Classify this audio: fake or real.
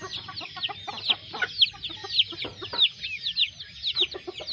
real